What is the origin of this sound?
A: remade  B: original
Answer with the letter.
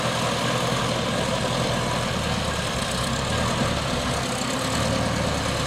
B